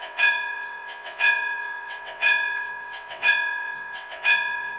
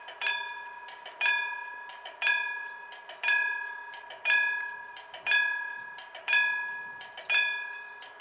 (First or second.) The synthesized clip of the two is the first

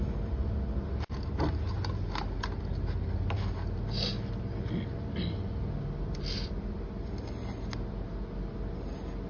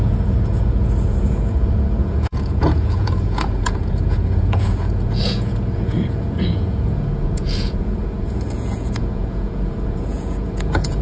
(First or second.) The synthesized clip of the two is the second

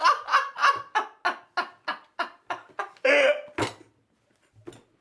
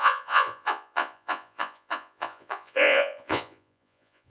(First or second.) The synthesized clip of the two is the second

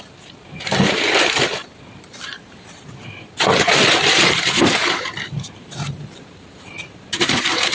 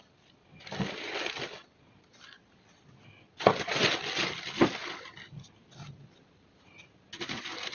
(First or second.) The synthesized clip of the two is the first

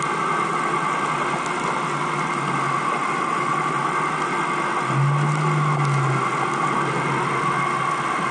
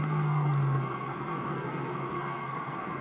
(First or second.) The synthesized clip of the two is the second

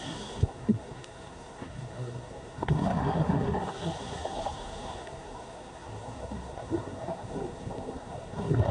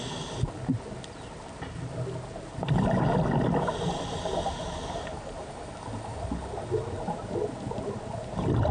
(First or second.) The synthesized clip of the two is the first